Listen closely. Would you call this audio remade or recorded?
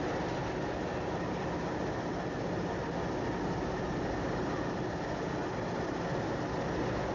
recorded